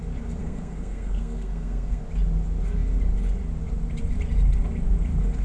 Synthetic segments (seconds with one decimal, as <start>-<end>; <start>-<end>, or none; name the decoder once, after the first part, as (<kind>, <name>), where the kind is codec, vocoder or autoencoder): 0.4-2.0 (codec, SNAC)